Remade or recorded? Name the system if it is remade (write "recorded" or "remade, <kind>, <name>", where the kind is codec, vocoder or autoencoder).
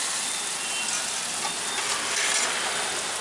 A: recorded